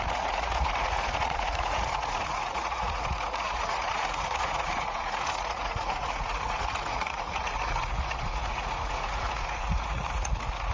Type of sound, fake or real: fake